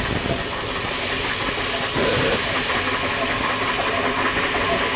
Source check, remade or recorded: recorded